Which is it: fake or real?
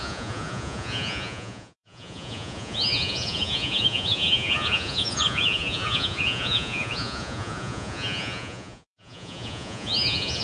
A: fake